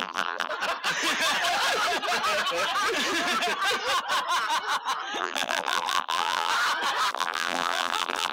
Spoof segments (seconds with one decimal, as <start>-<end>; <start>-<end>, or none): 0.0-0.5; 5.2-6.5; 7.1-8.3